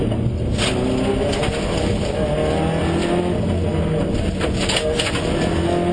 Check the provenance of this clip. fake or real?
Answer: real